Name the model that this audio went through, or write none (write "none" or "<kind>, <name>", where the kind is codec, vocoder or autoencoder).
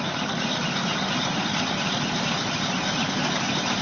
none